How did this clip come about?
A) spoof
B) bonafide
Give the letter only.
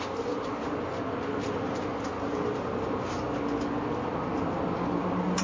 B